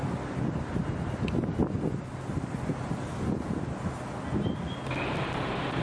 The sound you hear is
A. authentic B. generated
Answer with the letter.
A